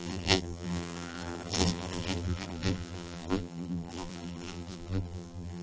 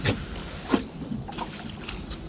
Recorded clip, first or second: second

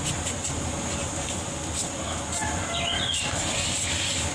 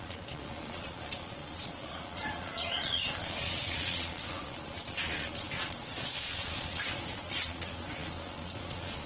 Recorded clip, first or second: first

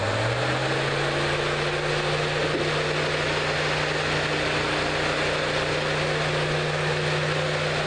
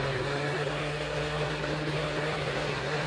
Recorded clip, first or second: first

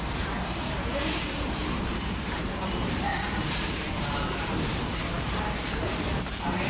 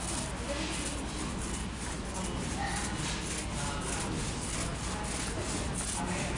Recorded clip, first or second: second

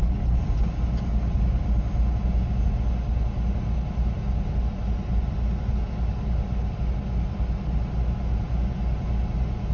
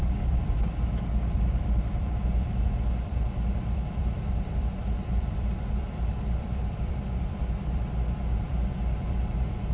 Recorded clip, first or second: first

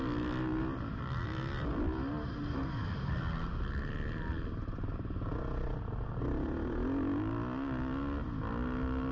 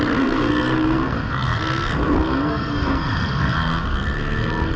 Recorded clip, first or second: first